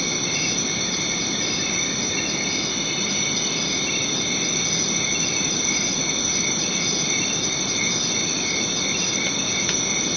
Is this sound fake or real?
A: real